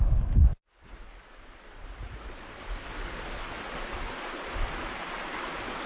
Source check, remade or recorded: recorded